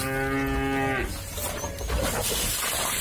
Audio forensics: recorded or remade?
recorded